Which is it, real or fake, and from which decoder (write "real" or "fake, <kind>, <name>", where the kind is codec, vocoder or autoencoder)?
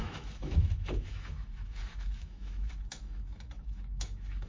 fake, autoencoder, DAC-VAE